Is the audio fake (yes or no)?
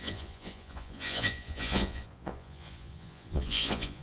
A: yes